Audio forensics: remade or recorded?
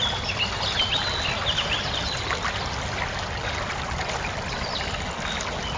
recorded